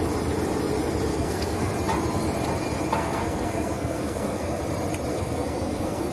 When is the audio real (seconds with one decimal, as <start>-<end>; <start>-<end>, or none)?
0.0-1.1; 1.7-2.9; 4.6-5.1